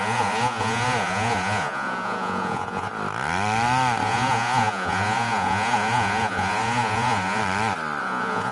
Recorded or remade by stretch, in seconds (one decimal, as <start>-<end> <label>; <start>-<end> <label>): 0.0-2.9 remade; 2.9-4.0 recorded; 4.0-7.4 remade; 7.4-8.0 recorded; 8.0-8.5 remade